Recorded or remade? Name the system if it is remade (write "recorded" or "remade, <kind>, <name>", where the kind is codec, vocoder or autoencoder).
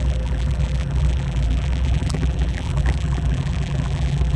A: remade, vocoder, BigVGAN v2